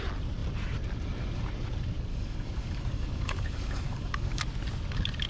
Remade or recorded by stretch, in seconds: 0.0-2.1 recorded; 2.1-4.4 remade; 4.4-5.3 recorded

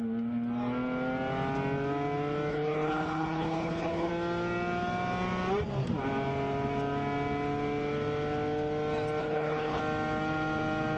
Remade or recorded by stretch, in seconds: 0.0-2.5 recorded; 2.5-4.1 remade; 4.1-9.2 recorded; 9.2-9.8 remade; 9.8-11.0 recorded

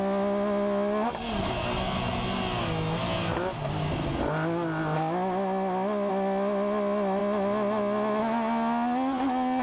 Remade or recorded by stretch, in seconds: 0.0-9.6 recorded

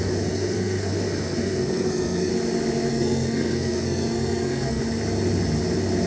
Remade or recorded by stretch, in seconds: 0.0-2.3 remade; 2.3-2.9 recorded; 2.9-4.8 remade; 4.8-6.1 recorded